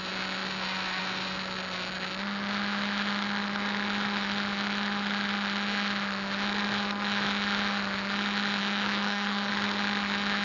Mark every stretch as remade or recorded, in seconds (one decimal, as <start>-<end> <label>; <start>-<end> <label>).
0.0-8.6 recorded; 8.6-9.5 remade; 9.5-10.4 recorded